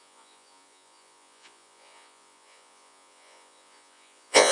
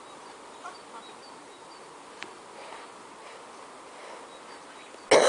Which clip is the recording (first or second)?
second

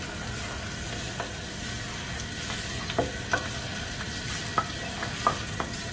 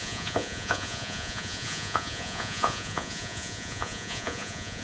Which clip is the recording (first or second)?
first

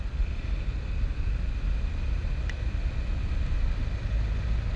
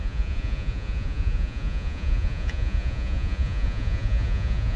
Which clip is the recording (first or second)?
first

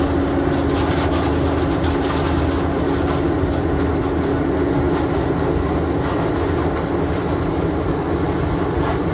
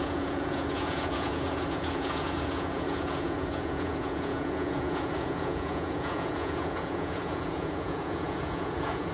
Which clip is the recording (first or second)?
first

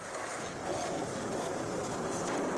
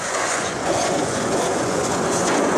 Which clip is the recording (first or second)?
first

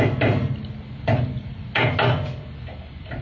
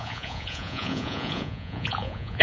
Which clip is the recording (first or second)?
first